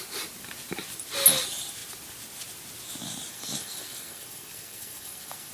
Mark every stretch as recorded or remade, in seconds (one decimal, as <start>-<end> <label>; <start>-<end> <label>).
0.0-3.3 recorded; 3.3-5.5 remade